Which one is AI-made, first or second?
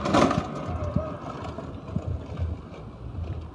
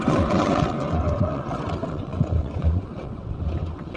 second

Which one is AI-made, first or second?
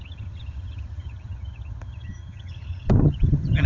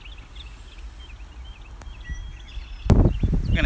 first